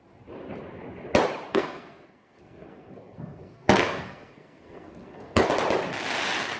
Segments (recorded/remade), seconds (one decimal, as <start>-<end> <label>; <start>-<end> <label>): 0.0-1.5 recorded; 1.5-5.5 remade; 5.5-6.6 recorded